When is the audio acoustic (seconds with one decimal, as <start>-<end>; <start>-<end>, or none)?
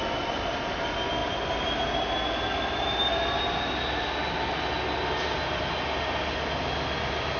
0.0-7.4